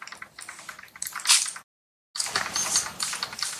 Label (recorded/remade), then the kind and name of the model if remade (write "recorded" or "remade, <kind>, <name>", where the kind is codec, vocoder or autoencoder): recorded